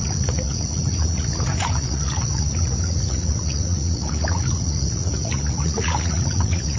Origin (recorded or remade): remade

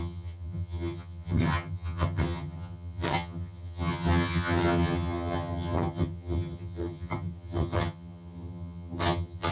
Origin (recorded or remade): remade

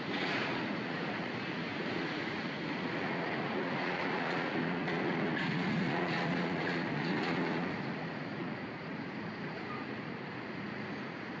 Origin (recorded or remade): remade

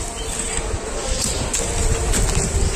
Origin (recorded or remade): recorded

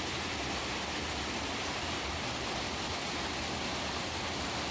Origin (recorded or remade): recorded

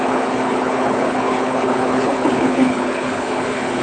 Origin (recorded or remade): remade